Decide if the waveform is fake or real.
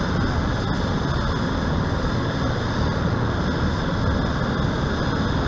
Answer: real